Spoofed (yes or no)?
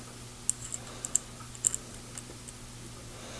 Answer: no